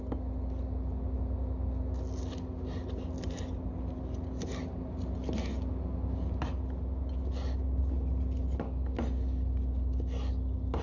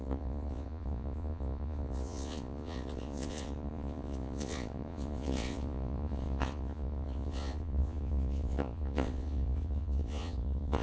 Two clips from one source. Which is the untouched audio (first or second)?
first